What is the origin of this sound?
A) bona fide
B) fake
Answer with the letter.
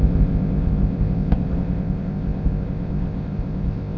B